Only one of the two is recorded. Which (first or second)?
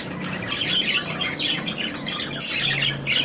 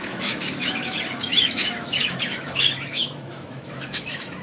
first